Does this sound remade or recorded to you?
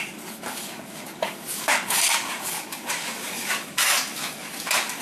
remade